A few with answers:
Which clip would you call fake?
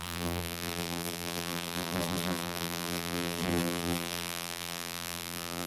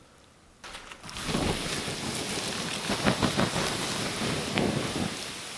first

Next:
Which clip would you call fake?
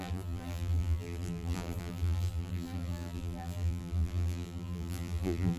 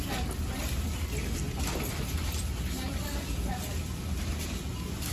first